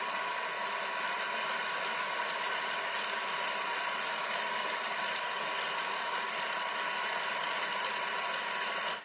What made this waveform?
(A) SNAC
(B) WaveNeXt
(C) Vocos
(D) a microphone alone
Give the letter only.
D